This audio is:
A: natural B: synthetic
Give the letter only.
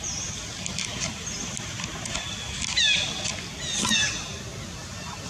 A